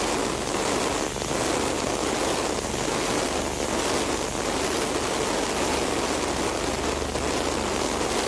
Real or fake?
real